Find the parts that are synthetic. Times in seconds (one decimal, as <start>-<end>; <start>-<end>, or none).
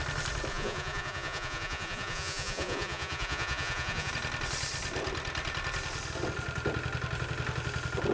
0.5-4.1